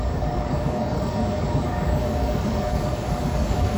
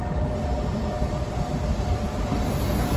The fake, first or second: first